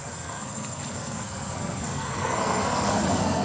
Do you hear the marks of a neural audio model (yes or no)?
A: yes